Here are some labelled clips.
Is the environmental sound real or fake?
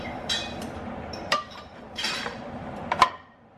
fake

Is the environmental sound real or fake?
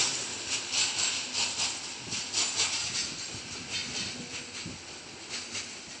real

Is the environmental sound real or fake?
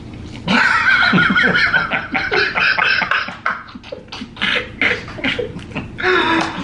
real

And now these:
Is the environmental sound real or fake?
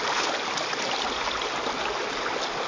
real